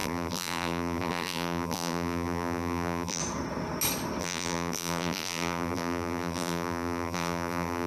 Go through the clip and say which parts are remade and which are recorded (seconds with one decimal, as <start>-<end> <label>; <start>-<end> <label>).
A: 0.0-3.2 remade; 3.2-4.2 recorded; 4.2-7.9 remade